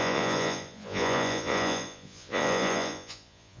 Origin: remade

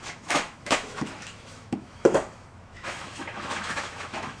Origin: remade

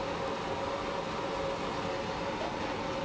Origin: recorded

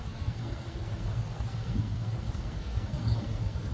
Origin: remade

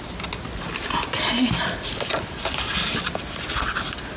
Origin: recorded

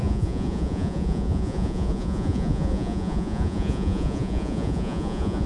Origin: remade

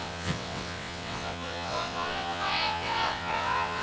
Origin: remade